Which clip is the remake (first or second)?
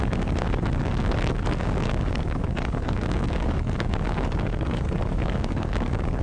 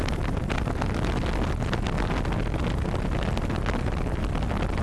first